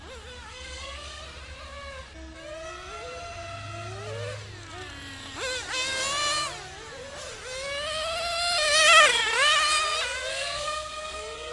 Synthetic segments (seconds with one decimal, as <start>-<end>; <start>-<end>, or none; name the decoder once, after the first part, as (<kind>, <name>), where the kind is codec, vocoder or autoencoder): 0.5-1.2 (codec, SNAC); 10.3-11.5